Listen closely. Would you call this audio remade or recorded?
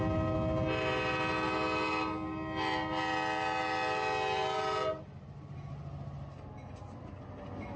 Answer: recorded